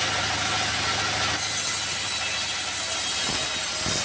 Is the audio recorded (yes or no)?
yes